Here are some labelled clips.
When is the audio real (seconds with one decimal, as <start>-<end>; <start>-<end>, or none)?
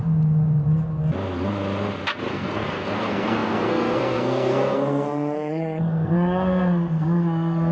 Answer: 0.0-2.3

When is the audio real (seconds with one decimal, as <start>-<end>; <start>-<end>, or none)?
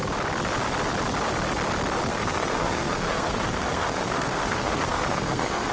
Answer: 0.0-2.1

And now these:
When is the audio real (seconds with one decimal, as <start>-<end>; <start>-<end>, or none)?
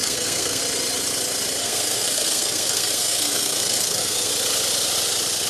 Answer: 0.6-1.6; 4.3-5.5